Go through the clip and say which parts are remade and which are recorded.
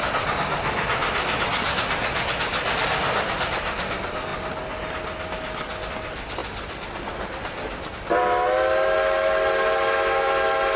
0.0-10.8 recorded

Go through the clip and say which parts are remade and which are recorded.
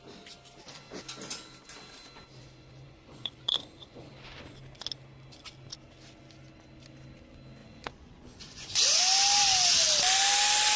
0.0-2.4 recorded; 2.4-4.1 remade; 4.1-7.6 recorded; 7.6-9.0 remade; 9.0-10.8 recorded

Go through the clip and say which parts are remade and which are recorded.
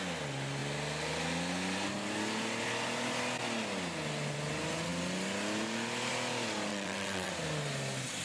0.0-6.7 recorded; 6.7-7.3 remade; 7.3-8.2 recorded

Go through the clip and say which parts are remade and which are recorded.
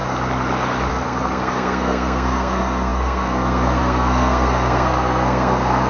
0.0-0.9 recorded; 0.9-5.9 remade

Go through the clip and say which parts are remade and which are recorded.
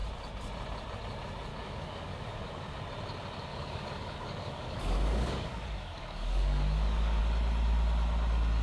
0.0-1.5 recorded; 1.5-2.8 remade; 2.8-3.5 recorded; 3.5-7.2 remade; 7.2-8.6 recorded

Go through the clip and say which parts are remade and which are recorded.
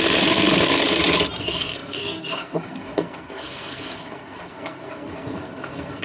0.0-0.8 remade; 0.8-1.4 recorded; 1.4-6.0 remade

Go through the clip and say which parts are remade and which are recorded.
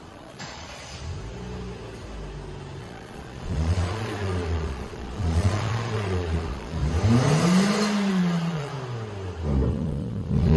0.0-0.8 remade; 0.8-2.8 recorded; 2.8-6.8 remade; 6.8-8.1 recorded; 8.1-8.7 remade; 8.7-9.7 recorded; 9.7-10.6 remade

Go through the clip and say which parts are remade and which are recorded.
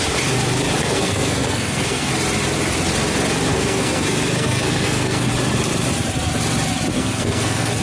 0.0-0.8 recorded; 0.8-2.1 remade; 2.1-3.5 recorded; 3.5-5.3 remade; 5.3-6.9 recorded; 6.9-7.8 remade